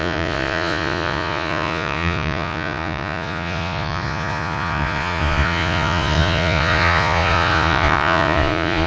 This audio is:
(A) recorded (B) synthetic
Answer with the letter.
B